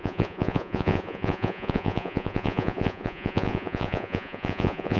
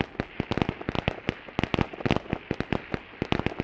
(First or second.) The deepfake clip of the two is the first